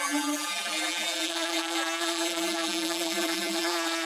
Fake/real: fake